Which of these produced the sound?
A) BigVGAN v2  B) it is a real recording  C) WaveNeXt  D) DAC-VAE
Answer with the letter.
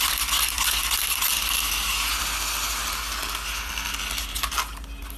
B